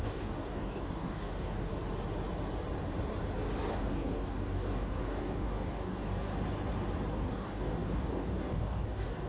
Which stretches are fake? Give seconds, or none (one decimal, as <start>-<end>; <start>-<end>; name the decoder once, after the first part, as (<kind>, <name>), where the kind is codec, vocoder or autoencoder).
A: 0.0-1.7 (codec, DAC); 3.7-6.3; 7.1-9.3